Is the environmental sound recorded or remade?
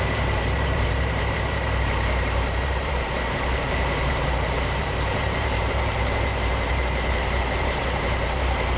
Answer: remade